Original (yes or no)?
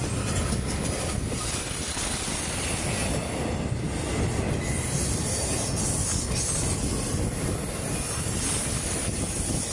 yes